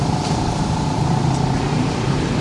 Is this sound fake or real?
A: fake